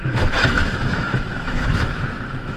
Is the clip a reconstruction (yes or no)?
yes